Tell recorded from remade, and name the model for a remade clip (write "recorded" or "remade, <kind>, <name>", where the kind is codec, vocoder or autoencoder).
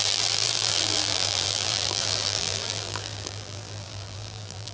remade, vocoder, BigVGAN v2